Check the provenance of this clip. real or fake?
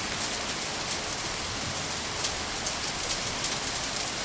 real